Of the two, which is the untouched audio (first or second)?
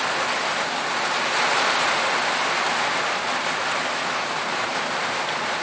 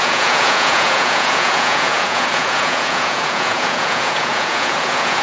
first